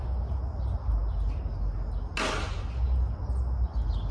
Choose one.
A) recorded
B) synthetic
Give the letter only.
A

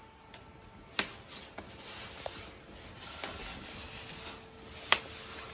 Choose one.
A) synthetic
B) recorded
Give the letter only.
B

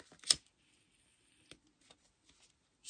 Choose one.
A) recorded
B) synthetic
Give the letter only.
A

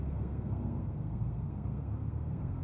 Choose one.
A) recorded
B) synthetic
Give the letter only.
B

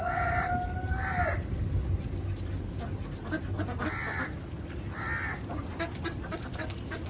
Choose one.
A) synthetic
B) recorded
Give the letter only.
B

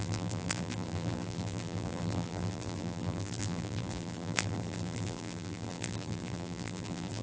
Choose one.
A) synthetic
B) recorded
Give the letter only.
A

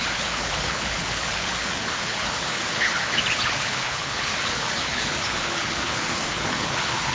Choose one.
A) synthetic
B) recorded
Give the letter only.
A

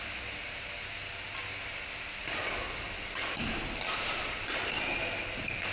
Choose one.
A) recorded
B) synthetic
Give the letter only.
A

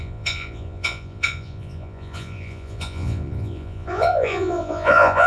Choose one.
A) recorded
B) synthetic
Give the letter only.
B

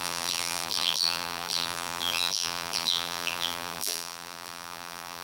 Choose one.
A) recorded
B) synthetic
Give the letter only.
B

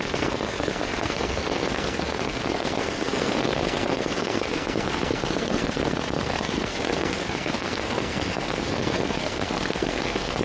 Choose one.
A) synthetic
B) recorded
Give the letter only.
A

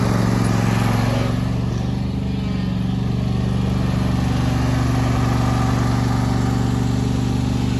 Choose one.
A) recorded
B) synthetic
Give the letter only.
A